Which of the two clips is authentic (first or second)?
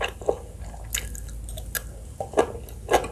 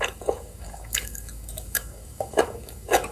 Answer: first